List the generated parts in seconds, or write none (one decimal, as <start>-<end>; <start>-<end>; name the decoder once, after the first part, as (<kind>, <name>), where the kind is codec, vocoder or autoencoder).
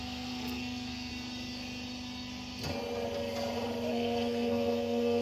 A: 0.0-1.1 (codec, SNAC); 3.9-5.2